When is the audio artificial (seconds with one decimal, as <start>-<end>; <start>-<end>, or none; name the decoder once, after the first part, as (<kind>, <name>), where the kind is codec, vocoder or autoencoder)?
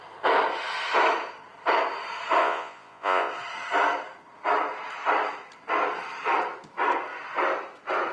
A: 2.4-3.3 (vocoder, Vocos)